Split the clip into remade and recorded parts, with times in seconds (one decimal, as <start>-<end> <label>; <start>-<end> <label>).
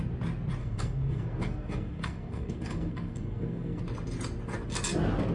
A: 0.0-0.6 recorded; 0.6-3.8 remade; 3.8-5.3 recorded